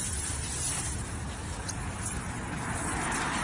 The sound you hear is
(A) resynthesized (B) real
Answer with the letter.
B